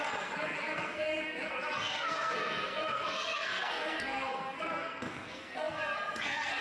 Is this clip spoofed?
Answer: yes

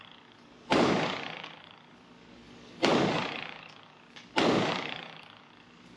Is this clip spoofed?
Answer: yes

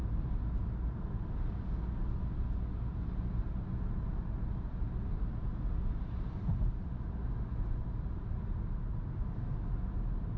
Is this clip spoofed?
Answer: no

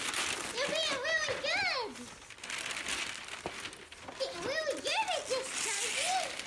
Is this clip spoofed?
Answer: no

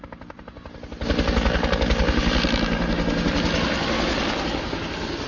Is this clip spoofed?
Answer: no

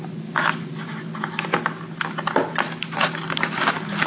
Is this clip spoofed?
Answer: no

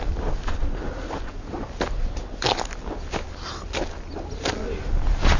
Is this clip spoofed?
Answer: no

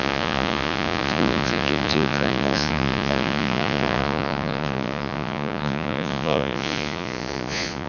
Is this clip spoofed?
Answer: yes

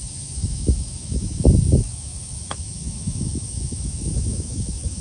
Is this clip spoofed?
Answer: yes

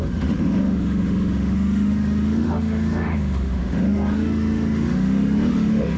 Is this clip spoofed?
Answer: yes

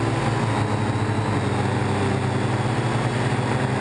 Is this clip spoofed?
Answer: no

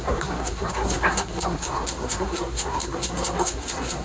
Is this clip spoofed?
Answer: yes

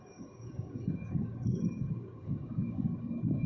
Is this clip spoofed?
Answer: yes